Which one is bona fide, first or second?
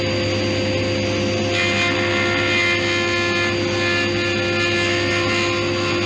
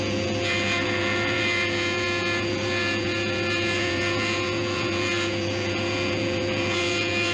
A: first